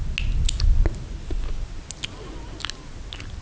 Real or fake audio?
real